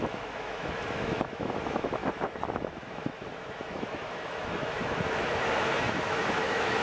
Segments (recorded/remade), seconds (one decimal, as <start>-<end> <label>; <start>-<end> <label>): 0.0-2.0 remade; 2.0-2.6 recorded; 2.6-6.8 remade